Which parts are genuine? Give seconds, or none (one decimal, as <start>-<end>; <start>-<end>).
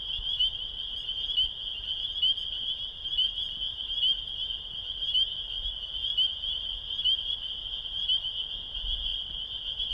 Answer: 0.0-9.9